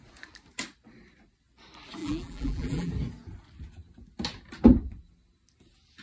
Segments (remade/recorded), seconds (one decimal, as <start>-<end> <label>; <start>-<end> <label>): 0.0-2.0 recorded; 2.0-2.9 remade; 2.9-6.0 recorded